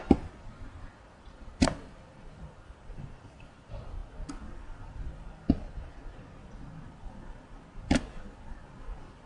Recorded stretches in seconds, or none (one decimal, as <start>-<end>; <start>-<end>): 4.0-9.3